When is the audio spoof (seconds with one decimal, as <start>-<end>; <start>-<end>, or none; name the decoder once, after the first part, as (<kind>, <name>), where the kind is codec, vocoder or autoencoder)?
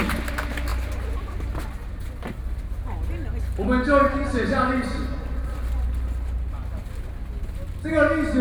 none